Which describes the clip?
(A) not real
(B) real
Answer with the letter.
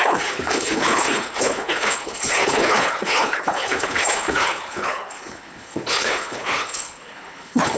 A